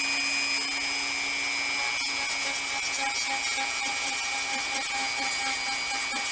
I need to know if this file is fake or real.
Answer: real